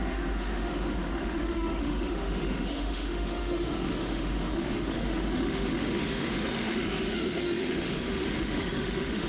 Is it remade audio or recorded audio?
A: remade